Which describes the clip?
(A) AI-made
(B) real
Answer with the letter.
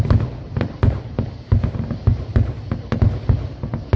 B